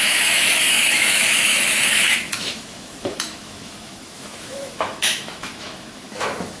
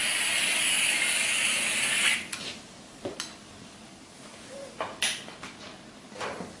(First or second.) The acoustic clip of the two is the second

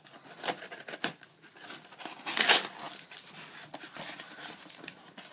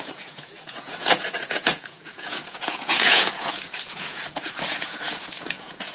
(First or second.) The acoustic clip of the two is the first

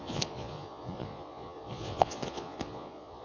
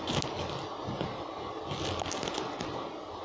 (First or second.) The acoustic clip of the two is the second